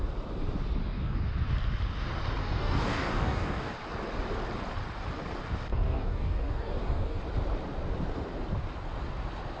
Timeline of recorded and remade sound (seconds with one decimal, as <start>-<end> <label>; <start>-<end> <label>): 0.0-0.8 recorded; 0.8-1.3 remade; 1.3-2.4 recorded; 2.4-3.7 remade; 3.7-5.7 recorded; 5.7-7.2 remade; 7.2-9.6 recorded